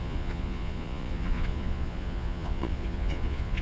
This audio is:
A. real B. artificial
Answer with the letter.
B